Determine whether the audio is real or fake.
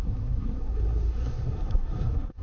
fake